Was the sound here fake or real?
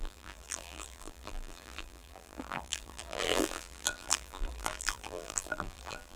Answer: fake